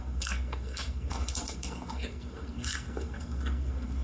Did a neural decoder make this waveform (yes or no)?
yes